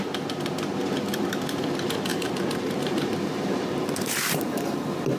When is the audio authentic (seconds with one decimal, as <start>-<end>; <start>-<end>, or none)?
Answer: 0.0-2.1; 4.5-5.2